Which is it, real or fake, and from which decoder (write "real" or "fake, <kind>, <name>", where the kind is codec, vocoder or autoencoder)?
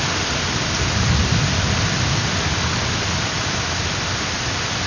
real